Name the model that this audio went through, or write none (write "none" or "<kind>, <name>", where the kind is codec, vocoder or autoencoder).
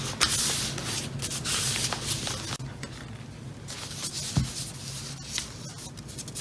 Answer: none